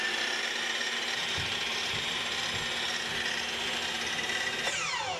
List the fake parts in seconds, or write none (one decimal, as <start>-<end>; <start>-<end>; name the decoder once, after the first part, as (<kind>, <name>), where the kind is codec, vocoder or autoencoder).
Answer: 0.8-2.4 (vocoder, BigVGAN v2)

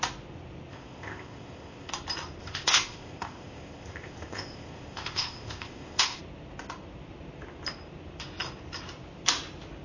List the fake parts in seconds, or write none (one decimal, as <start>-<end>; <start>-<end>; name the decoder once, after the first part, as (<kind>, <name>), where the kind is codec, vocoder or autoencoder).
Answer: 0.7-1.9 (codec, ZipCodec); 2.4-6.2